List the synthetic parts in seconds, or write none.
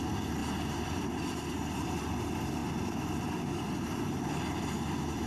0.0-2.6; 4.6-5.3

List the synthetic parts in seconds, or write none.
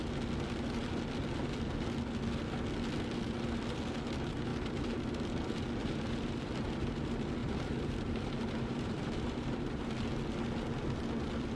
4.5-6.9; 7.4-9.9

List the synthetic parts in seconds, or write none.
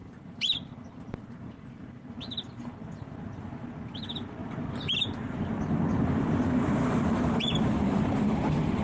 0.0-4.4; 6.3-8.8